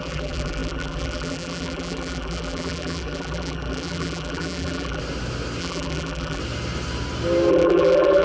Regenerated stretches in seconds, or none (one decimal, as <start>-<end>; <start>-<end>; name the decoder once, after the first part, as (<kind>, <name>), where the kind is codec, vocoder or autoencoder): 0.0-5.0 (vocoder, BigVGAN v2); 5.6-6.4; 7.5-8.2